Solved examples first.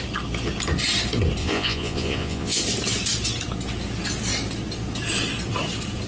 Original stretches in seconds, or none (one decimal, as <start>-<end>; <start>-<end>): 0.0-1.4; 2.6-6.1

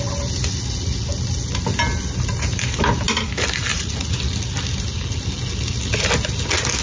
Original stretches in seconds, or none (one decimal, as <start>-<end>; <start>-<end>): 0.0-3.7; 4.2-6.8

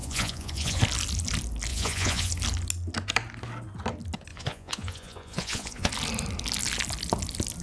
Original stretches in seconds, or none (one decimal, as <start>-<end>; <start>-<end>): 0.8-1.7; 2.3-4.3; 5.9-7.6

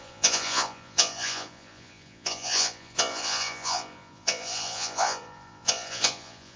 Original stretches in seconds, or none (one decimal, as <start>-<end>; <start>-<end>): none

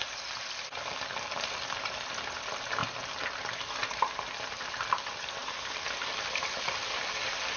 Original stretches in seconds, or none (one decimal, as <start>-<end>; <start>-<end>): 0.0-7.6

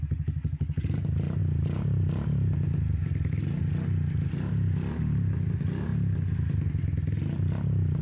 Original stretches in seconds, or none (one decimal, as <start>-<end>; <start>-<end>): 0.0-8.0

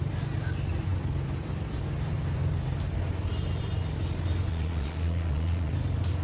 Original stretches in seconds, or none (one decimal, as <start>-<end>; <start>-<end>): 0.0-4.5; 5.7-6.2

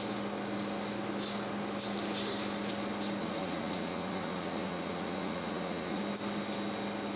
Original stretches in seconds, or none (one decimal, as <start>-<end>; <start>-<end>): 0.0-3.2; 6.0-7.2